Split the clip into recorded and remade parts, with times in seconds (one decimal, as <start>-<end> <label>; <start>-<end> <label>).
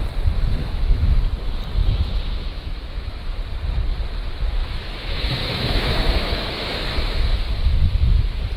0.0-0.6 recorded; 0.6-1.2 remade; 1.2-1.8 recorded; 1.8-3.4 remade; 3.4-4.6 recorded; 4.6-7.2 remade; 7.2-8.6 recorded